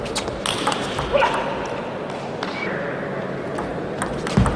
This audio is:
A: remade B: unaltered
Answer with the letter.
B